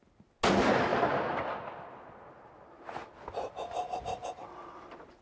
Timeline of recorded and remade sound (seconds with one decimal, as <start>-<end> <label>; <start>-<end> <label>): 0.0-5.2 recorded